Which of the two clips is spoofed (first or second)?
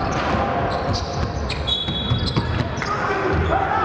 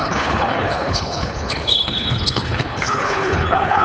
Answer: second